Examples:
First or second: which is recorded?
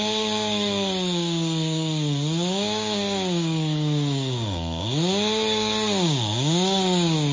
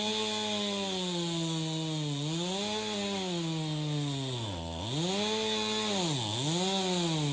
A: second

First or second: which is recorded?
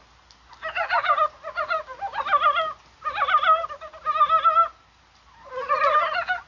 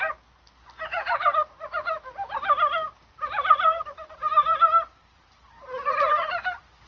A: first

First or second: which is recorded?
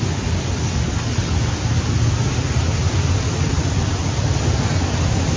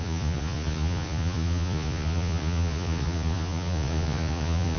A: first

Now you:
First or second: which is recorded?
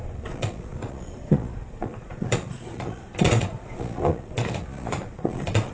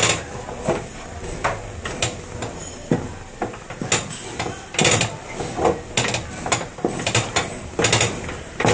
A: second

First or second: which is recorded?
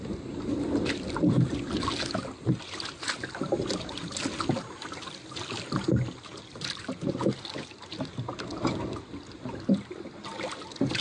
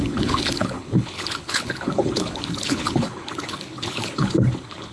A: first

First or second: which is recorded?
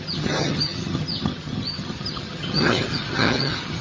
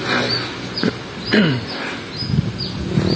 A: second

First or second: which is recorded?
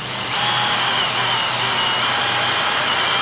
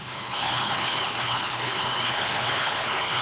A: first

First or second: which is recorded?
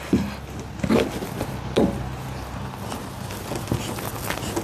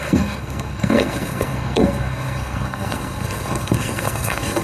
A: first